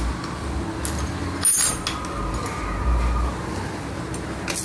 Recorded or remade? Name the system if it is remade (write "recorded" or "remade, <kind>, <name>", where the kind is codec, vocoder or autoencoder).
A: recorded